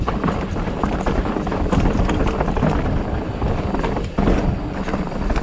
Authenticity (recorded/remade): recorded